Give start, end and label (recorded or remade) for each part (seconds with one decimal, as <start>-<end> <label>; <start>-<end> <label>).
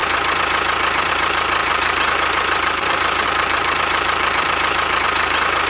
0.0-1.1 recorded; 1.1-5.7 remade